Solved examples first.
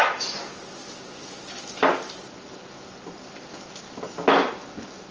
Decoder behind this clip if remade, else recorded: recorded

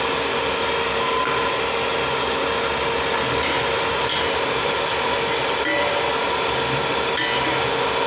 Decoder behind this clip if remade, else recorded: recorded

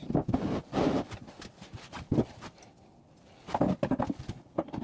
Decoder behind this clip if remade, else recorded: recorded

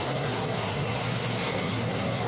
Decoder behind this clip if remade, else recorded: remade, codec, SNAC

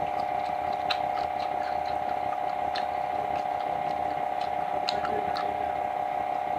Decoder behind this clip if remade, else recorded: recorded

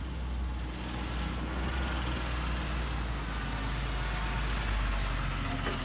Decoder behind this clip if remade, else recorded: recorded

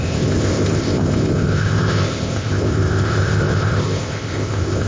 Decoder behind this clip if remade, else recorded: remade, codec, ZipCodec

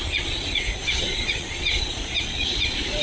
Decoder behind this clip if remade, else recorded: remade, vocoder, Vocos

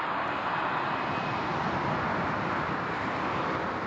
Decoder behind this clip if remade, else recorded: recorded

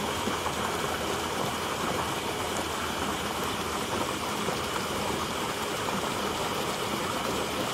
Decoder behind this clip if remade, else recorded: remade, vocoder, BigVGAN v2